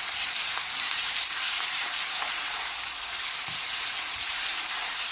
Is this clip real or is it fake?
fake